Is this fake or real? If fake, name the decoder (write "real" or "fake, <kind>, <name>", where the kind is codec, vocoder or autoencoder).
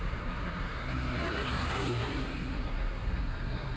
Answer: fake, codec, SNAC